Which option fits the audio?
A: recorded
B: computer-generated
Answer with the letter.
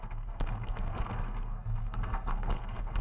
B